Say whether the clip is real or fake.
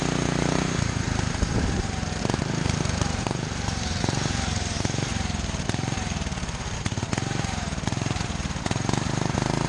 fake